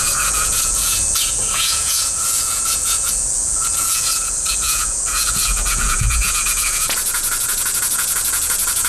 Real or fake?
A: fake